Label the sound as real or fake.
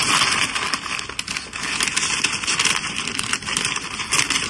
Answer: real